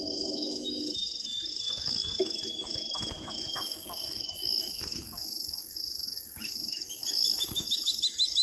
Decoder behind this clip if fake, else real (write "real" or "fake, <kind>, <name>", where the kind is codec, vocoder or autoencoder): fake, autoencoder, DAC-VAE